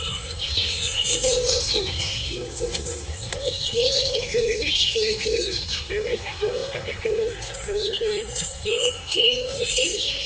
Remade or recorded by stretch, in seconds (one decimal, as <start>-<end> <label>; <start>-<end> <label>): 0.0-10.3 remade